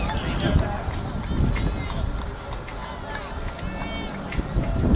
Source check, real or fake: real